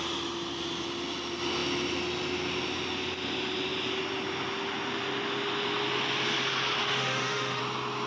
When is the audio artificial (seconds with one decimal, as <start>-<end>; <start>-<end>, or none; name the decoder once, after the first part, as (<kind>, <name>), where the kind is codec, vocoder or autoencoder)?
6.8-7.6 (autoencoder, DAC-VAE)